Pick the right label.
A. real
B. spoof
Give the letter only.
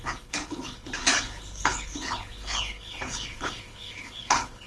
B